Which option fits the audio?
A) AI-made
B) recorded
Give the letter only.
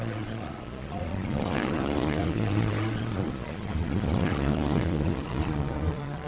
A